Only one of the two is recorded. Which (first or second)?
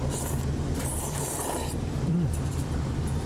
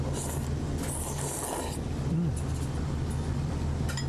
second